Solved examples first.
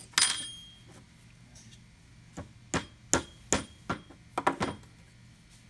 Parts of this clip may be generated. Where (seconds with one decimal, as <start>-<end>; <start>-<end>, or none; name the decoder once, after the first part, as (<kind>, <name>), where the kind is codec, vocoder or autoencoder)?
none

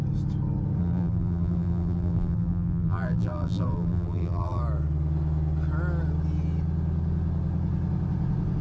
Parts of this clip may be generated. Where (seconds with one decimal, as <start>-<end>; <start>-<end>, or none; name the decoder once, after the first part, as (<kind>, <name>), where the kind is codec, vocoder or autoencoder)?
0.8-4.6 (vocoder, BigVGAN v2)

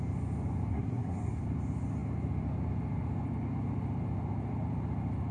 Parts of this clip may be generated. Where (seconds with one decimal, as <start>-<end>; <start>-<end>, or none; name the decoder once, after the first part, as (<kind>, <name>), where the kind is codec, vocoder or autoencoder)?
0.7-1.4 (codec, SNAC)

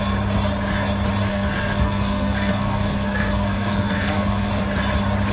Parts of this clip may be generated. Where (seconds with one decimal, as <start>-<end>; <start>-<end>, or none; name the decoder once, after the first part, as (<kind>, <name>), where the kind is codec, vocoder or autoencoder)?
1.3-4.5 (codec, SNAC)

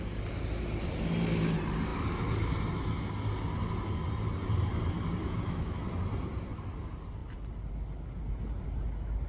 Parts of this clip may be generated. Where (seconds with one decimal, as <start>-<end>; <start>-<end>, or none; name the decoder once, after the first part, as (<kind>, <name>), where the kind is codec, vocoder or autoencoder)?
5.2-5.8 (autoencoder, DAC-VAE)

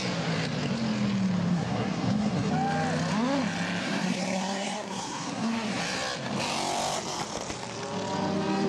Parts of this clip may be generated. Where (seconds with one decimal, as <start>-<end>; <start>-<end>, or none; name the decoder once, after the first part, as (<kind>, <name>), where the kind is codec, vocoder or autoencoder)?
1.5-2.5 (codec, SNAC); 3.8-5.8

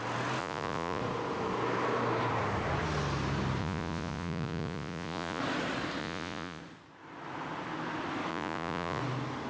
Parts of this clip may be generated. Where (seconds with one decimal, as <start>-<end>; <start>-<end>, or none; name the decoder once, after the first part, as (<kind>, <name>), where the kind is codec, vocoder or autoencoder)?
0.4-1.0 (vocoder, Vocos); 3.6-5.4; 6.0-6.6; 8.3-9.0